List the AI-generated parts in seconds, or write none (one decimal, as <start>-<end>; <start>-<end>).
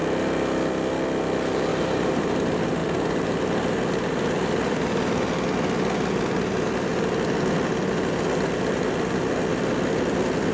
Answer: 1.7-2.4